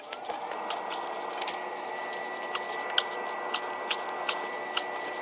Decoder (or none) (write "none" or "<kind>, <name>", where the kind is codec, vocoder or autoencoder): none